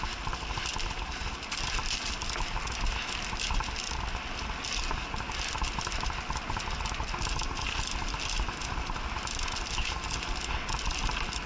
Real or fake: real